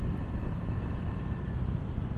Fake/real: real